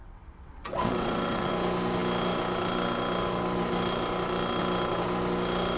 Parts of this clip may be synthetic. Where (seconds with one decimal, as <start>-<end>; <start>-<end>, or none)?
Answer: 0.0-1.5